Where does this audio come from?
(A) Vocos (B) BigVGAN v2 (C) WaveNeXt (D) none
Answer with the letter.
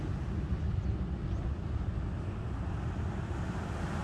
D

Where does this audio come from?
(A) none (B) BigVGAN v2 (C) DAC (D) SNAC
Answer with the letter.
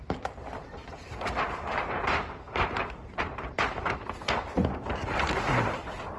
B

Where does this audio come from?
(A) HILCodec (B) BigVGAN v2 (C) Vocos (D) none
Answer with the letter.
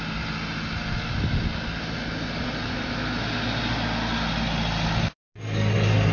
D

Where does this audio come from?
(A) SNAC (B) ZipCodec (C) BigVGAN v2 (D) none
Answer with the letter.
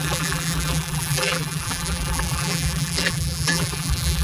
C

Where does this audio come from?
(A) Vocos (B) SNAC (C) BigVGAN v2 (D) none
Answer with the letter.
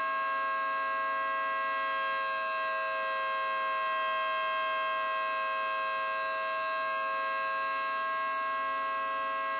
D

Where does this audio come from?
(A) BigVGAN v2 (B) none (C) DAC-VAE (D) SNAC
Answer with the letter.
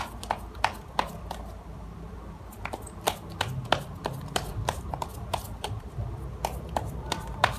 A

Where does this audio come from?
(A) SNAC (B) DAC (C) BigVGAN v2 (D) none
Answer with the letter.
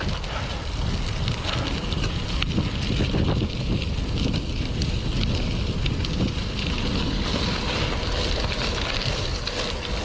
D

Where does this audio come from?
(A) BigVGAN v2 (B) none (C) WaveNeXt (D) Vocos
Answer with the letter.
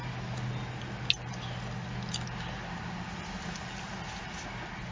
B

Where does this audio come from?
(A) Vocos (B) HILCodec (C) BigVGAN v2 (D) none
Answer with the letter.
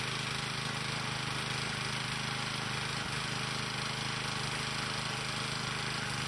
D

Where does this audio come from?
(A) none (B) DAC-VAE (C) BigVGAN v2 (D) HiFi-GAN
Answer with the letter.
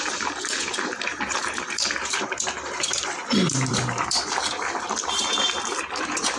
C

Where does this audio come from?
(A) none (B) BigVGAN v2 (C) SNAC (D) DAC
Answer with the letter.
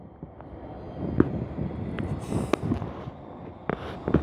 A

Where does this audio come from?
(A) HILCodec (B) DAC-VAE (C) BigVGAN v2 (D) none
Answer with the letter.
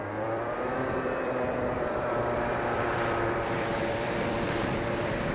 C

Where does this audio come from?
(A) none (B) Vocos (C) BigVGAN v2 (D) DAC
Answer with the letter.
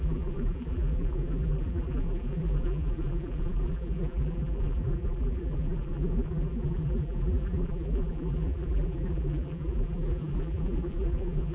C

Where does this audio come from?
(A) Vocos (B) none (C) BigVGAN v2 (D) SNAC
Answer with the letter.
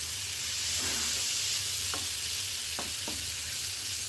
B